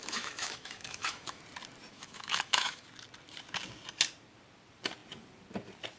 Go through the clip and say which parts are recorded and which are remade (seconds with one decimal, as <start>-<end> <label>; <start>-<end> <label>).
0.0-1.4 remade; 1.4-1.9 recorded; 1.9-2.8 remade; 2.8-6.0 recorded